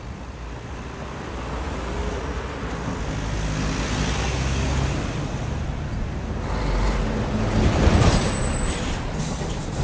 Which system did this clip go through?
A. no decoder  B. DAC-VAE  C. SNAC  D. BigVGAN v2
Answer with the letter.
A